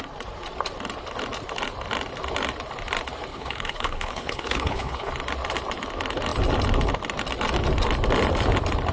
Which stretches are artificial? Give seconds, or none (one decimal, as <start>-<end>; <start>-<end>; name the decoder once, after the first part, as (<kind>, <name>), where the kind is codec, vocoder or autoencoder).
3.3-5.1 (codec, HILCodec)